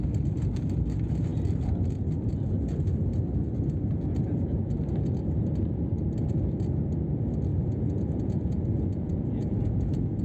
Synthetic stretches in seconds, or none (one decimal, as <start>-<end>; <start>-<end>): 7.5-10.2